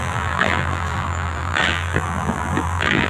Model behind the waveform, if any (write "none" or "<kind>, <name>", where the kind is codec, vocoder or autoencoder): vocoder, BigVGAN v2